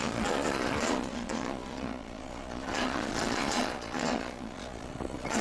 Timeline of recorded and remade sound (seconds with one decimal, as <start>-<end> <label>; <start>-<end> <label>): 0.0-5.4 remade